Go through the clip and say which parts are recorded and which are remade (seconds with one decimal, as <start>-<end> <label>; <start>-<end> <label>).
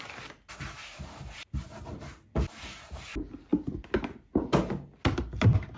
0.0-5.8 recorded